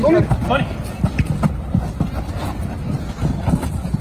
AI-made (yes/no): no